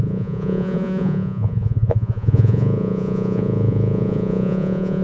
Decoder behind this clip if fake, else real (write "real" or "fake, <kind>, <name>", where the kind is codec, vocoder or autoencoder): fake, vocoder, Vocos